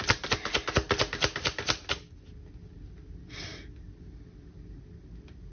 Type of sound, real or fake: real